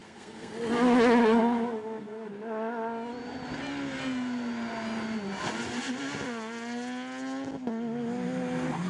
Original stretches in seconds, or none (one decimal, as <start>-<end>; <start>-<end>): 0.5-1.2; 2.3-8.9